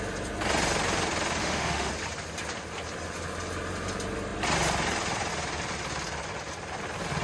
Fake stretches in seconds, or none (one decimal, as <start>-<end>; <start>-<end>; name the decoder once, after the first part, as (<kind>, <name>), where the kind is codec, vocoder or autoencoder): 1.4-1.9 (autoencoder, DAC-VAE)

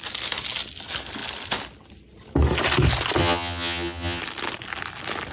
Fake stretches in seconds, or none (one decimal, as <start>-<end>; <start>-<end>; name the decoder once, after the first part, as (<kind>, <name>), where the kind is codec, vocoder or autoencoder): 3.2-4.2 (vocoder, HiFi-GAN)

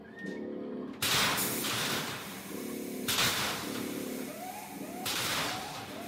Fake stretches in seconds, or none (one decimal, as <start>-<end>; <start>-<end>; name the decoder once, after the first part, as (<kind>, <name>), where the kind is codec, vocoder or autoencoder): 1.6-2.4 (vocoder, BigVGAN v2); 3.3-6.1

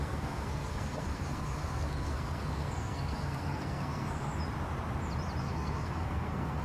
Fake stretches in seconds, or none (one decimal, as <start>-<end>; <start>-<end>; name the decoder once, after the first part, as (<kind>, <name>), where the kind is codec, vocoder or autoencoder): 0.0-4.3 (codec, SNAC); 5.4-6.6